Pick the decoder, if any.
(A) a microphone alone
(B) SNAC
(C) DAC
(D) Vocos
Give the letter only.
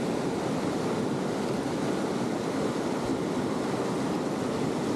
A